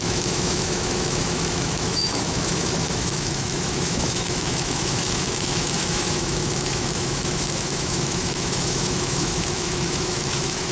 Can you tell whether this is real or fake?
fake